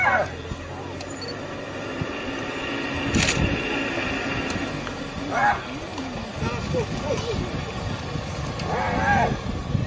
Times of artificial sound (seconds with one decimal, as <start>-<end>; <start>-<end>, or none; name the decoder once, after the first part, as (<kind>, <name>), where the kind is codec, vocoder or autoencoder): none